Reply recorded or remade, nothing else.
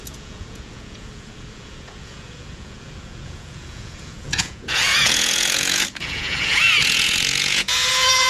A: remade